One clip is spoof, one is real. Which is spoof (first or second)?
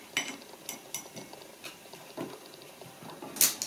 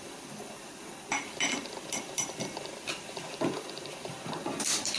second